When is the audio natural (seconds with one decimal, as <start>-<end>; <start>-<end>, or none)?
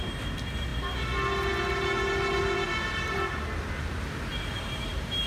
0.0-4.3